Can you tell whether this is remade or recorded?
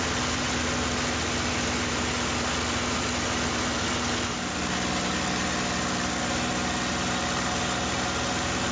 recorded